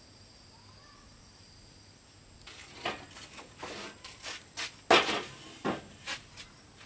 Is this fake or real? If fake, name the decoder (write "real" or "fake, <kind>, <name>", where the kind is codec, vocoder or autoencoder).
real